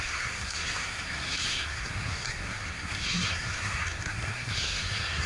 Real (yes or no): no